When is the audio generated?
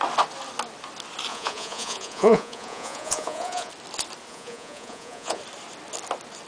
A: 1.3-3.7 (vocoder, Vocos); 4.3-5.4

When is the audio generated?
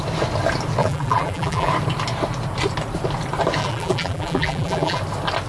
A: 0.8-1.7 (vocoder, BigVGAN v2); 3.6-5.0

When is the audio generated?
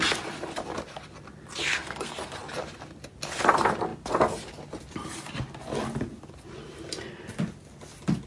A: 1.6-2.1 (codec, SNAC)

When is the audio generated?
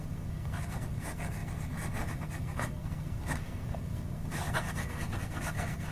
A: 0.0-5.9 (codec, SNAC)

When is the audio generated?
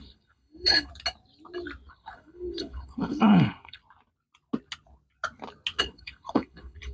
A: 0.0-0.9 (codec, HILCodec); 1.9-3.8; 5.8-6.9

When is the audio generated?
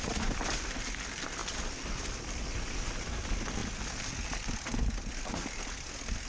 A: none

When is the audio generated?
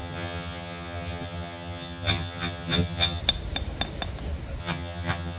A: 0.0-3.2 (vocoder, HiFi-GAN); 4.6-5.4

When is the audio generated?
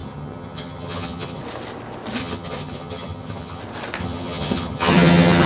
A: 0.0-1.4 (vocoder, HiFi-GAN); 2.2-3.6; 4.0-5.5